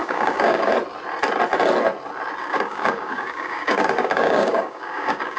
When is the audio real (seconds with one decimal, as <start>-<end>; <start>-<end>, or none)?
0.7-2.4